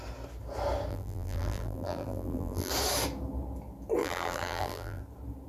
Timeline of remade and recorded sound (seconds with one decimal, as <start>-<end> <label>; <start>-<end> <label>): 0.0-0.9 recorded; 0.9-2.7 remade; 2.7-4.0 recorded; 4.0-5.0 remade; 5.0-5.5 recorded

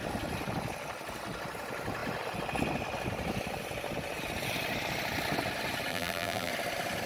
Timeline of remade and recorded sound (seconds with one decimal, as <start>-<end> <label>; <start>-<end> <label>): 0.0-5.9 recorded; 5.9-6.5 remade; 6.5-7.1 recorded

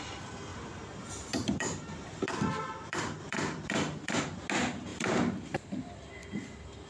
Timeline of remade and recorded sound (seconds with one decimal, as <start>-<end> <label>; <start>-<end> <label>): 0.0-0.5 recorded; 0.5-4.2 remade; 4.2-4.9 recorded; 4.9-5.8 remade; 5.8-6.9 recorded

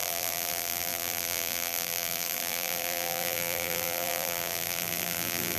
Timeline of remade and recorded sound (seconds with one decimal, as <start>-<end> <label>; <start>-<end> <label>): 0.0-5.6 remade

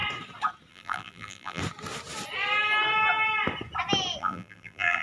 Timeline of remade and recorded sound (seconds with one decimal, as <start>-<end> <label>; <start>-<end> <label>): 0.0-0.7 recorded; 0.7-1.6 remade; 1.6-4.2 recorded; 4.2-5.0 remade

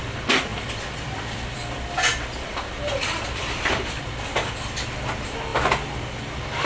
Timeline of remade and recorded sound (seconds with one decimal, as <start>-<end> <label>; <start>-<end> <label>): 0.0-0.5 recorded; 0.5-4.5 remade; 4.5-6.7 recorded